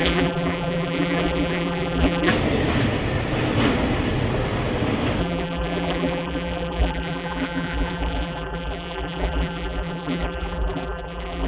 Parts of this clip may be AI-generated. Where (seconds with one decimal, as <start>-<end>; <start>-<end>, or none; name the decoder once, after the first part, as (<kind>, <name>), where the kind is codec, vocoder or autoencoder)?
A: 0.0-2.3 (vocoder, BigVGAN v2); 5.2-11.5